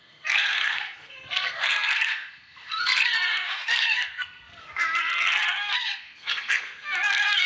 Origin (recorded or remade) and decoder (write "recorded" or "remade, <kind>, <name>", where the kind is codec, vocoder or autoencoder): remade, codec, SNAC